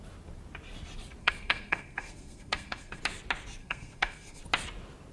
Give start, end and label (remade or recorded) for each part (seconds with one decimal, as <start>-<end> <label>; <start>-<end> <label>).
0.0-1.2 recorded; 1.2-3.0 remade; 3.0-3.6 recorded; 3.6-4.4 remade; 4.4-5.1 recorded